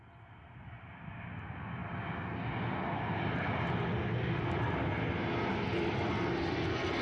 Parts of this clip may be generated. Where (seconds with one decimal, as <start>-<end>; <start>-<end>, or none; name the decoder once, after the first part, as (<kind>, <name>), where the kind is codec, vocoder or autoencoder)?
none